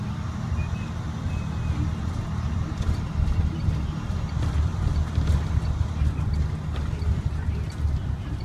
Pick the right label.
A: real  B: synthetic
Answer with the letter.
A